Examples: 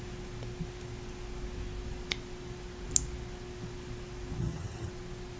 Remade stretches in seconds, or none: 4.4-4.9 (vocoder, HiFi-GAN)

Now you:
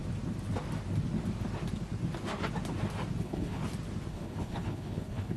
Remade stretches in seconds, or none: 3.2-3.6 (codec, HILCodec); 4.1-5.4

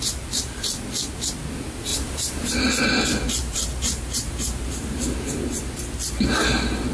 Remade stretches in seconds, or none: 1.9-2.5 (vocoder, BigVGAN v2); 3.4-5.6